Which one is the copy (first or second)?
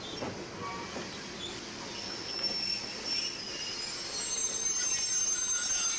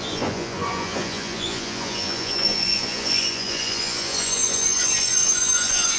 second